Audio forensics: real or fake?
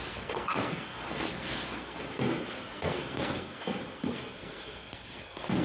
fake